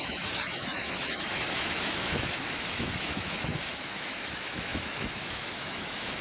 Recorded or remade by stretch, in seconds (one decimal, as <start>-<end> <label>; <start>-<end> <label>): 0.0-6.2 remade